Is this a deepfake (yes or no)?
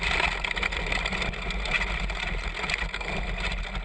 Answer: no